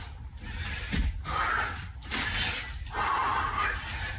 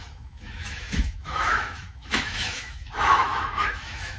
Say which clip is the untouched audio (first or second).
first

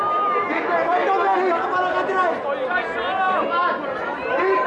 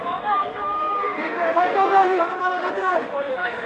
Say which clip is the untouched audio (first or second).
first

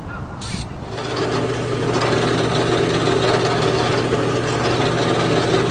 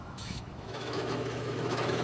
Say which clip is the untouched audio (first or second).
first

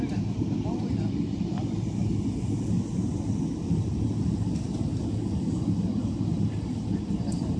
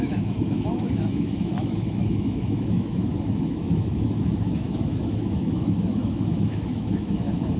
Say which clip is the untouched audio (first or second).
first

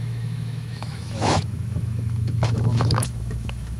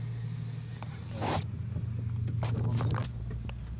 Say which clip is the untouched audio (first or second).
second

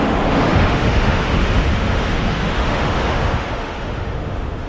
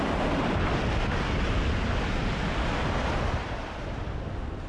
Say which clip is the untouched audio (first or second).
second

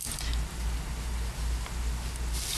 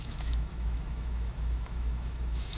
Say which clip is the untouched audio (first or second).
first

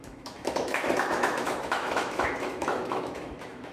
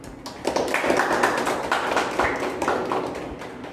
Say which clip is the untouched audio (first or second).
second